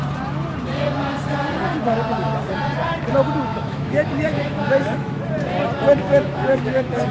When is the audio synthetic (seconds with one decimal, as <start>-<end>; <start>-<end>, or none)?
3.5-5.2; 6.0-7.1